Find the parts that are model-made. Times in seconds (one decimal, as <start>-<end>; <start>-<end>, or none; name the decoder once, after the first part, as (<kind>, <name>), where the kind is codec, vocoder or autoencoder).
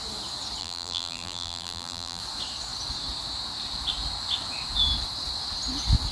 0.6-2.2 (vocoder, BigVGAN v2)